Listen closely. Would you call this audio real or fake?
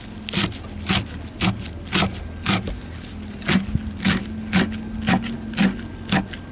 real